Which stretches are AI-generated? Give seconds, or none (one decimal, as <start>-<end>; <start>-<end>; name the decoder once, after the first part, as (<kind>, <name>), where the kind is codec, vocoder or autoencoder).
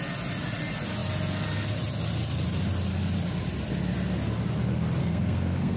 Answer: 5.0-5.8 (codec, SNAC)